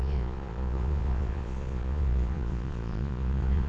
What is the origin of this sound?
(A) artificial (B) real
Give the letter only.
A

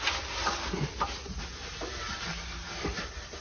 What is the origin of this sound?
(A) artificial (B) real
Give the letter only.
B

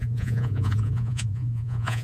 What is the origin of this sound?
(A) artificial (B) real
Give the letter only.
A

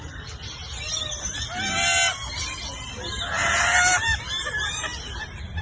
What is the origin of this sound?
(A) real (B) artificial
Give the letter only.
A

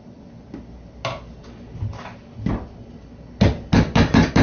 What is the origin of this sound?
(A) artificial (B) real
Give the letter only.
B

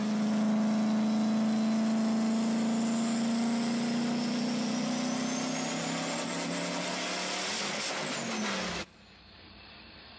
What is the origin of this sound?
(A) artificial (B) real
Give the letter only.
B